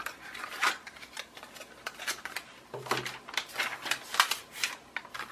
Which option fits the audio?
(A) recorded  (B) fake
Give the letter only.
A